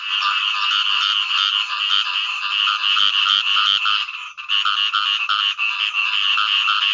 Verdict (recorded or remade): recorded